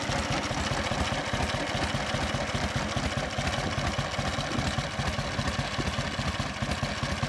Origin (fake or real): real